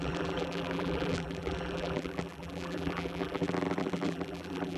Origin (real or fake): fake